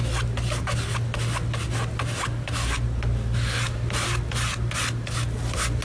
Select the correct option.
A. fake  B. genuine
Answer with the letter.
B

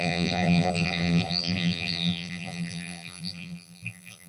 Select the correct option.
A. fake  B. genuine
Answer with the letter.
A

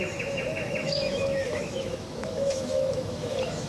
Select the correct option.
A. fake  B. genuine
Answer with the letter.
A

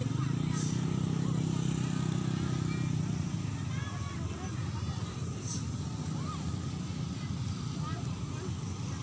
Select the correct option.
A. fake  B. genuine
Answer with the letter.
B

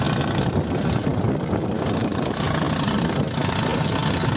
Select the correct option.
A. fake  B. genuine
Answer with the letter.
B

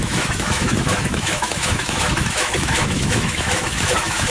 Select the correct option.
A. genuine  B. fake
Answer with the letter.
B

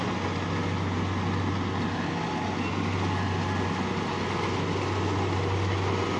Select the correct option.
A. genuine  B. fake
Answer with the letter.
A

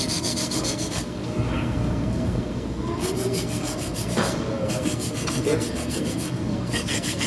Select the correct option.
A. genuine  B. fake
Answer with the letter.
B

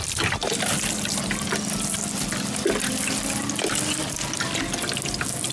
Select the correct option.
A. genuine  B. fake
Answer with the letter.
A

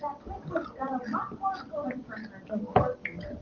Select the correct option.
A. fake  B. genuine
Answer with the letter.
B